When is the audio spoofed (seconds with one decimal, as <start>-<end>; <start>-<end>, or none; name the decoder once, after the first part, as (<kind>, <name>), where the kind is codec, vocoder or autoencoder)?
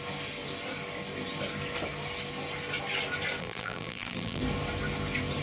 3.4-4.4 (vocoder, BigVGAN v2)